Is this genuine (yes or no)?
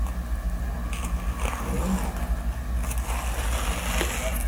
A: yes